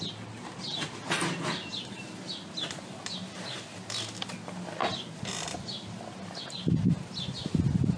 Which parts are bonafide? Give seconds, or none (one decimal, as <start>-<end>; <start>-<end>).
0.0-8.0